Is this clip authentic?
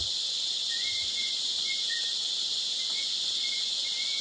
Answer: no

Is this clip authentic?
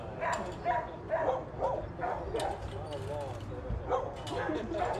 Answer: yes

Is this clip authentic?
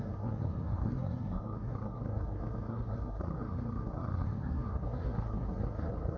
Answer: no